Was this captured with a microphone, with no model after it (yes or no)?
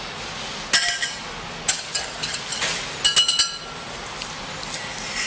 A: yes